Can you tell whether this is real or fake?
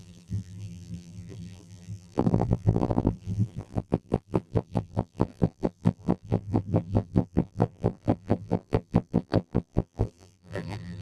fake